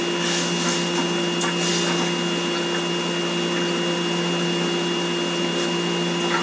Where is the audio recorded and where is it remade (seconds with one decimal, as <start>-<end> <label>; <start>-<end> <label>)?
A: 0.0-6.4 recorded